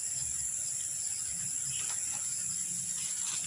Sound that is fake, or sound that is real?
real